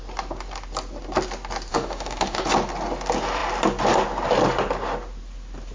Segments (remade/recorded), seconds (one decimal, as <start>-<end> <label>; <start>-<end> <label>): 0.0-1.7 recorded; 1.7-2.4 remade; 2.4-5.7 recorded